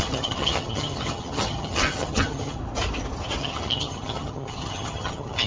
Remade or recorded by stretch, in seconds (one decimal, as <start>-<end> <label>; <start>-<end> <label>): 0.0-2.6 remade; 2.6-3.4 recorded; 3.4-5.5 remade

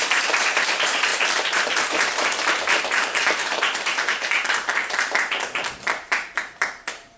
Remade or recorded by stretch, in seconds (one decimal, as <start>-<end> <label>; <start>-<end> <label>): 0.0-7.2 remade

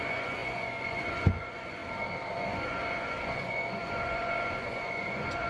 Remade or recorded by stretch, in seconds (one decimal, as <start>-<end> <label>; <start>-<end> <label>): 0.0-1.8 remade; 1.8-2.3 recorded; 2.3-5.5 remade

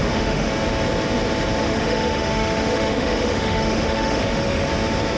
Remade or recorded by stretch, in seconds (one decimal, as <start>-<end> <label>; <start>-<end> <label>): 0.0-0.5 remade; 0.5-1.6 recorded; 1.6-4.7 remade; 4.7-5.2 recorded

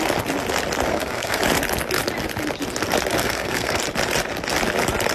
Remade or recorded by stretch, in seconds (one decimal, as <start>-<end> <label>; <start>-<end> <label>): 0.0-0.9 recorded; 0.9-1.4 remade; 1.4-3.2 recorded; 3.2-3.8 remade; 3.8-5.1 recorded